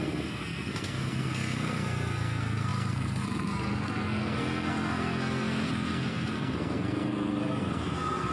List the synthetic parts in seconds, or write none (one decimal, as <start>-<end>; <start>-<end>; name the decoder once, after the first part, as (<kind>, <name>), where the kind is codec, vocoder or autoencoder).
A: 0.0-8.3 (codec, SNAC)